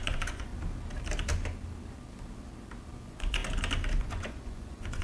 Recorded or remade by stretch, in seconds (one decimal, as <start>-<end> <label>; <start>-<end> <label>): 0.0-0.5 remade; 0.5-3.0 recorded; 3.0-3.4 remade; 3.4-4.0 recorded; 4.0-5.0 remade